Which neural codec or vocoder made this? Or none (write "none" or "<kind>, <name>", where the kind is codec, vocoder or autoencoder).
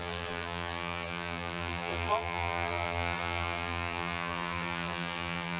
vocoder, BigVGAN v2